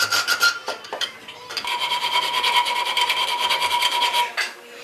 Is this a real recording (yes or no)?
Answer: yes